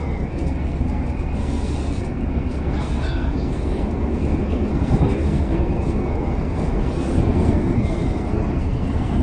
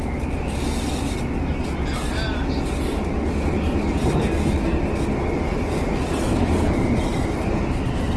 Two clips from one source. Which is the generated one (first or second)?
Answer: first